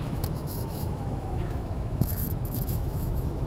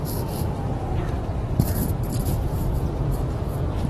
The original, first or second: second